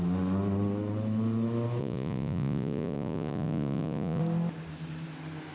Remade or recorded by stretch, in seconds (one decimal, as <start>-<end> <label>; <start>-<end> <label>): 0.0-1.8 recorded; 1.8-4.2 remade; 4.2-5.5 recorded